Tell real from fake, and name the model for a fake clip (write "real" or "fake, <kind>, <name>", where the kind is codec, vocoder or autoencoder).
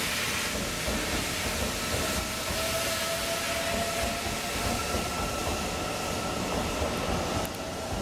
real